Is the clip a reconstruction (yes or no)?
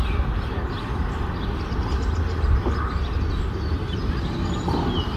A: no